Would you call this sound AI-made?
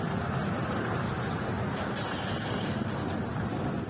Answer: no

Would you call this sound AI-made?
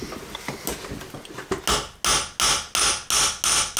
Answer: no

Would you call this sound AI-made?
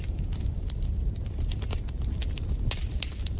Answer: no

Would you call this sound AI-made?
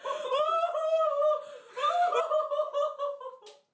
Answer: no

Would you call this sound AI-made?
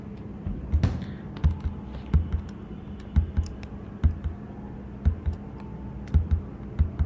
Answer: no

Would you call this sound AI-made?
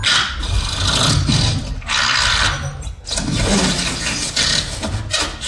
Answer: no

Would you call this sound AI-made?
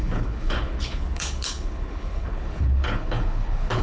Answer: yes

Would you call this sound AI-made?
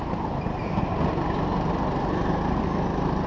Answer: no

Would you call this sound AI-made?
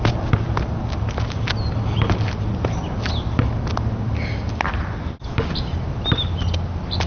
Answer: no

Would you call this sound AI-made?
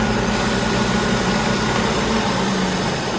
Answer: no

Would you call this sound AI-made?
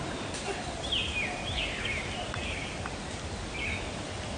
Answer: no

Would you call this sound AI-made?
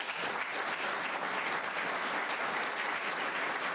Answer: no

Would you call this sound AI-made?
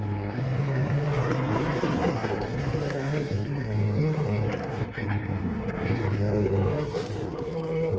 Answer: yes